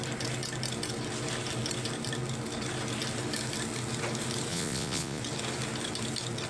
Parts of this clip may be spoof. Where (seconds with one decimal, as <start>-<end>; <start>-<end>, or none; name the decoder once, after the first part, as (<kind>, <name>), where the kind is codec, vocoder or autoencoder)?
4.5-5.2 (vocoder, Vocos)